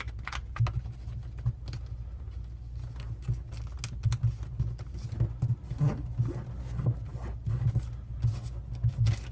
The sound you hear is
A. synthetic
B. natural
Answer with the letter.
B